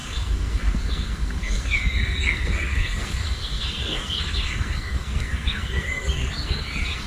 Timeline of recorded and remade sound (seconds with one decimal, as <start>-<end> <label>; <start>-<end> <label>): 0.0-7.1 remade